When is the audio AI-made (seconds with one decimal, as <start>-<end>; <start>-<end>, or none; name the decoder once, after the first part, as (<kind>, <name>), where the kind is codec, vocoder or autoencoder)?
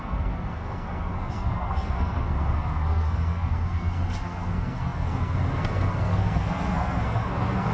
0.0-7.7 (codec, SNAC)